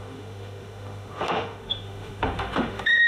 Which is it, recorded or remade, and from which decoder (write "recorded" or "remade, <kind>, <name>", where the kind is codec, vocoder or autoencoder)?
remade, autoencoder, DAC-VAE